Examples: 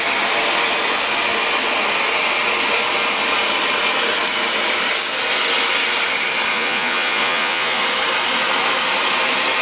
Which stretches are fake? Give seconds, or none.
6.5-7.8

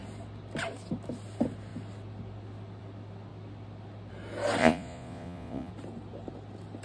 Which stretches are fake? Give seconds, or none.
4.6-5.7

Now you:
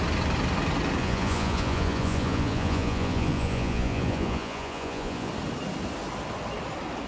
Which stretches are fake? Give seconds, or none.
1.0-5.3

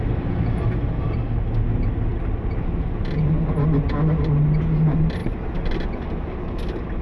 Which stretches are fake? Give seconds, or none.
none

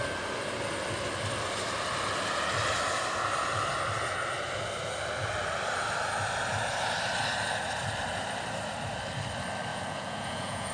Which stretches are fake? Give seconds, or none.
9.7-10.7

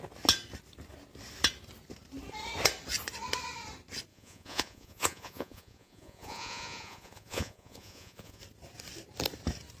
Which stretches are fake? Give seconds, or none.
4.1-8.4

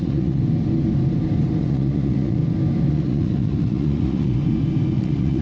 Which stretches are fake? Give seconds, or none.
0.0-0.4; 1.6-2.4; 2.9-4.4; 4.9-5.4